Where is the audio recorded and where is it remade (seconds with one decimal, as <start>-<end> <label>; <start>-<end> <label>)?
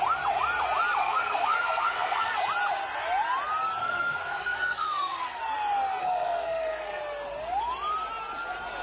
0.0-1.0 recorded; 1.0-2.4 remade; 2.4-3.8 recorded; 3.8-5.4 remade; 5.4-6.0 recorded; 6.0-7.0 remade; 7.0-8.8 recorded